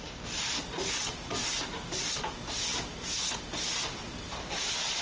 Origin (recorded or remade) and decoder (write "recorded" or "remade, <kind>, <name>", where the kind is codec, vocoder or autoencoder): recorded